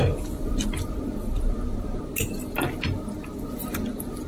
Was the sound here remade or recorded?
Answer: recorded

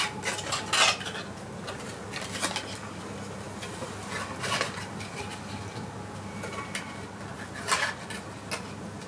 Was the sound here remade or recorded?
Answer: recorded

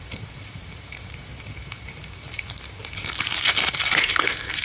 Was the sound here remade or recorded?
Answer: remade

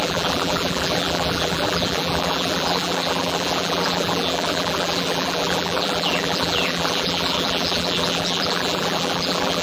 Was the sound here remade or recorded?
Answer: remade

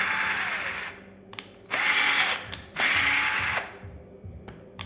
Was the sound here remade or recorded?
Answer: recorded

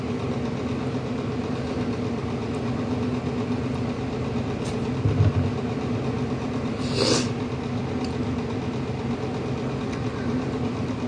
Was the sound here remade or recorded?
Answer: recorded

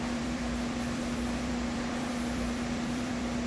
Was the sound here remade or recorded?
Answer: remade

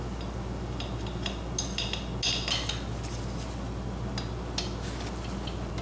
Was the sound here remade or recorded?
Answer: recorded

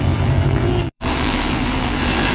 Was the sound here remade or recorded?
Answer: remade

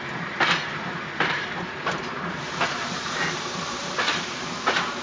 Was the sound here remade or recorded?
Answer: remade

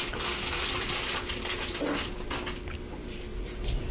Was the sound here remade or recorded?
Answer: recorded